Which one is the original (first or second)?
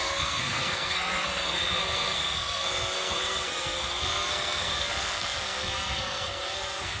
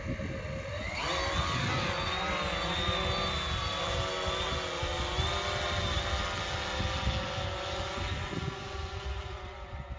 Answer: second